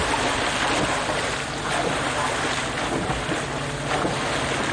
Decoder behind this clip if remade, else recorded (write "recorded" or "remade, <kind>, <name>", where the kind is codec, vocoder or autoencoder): recorded